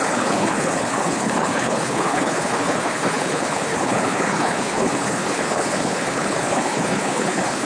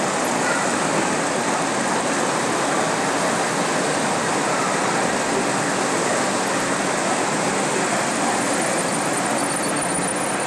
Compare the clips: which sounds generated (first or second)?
first